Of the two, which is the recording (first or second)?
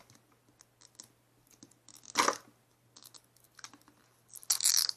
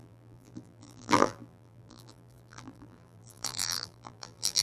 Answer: first